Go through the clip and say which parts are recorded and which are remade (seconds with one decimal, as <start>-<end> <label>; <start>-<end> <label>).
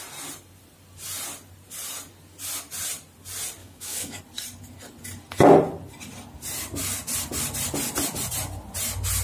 0.0-3.6 recorded; 3.6-4.2 remade; 4.2-9.2 recorded